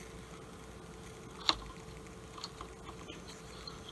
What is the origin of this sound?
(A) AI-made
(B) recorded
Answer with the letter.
B